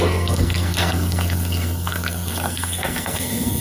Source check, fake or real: fake